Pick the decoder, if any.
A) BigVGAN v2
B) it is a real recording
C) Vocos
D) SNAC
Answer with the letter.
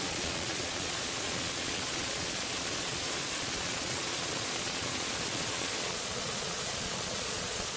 C